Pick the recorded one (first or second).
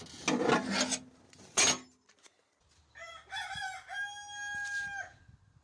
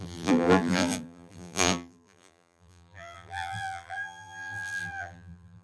first